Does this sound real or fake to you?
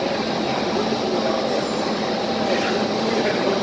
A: real